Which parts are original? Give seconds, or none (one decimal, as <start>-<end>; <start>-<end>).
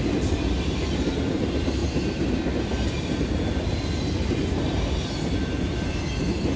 0.0-6.6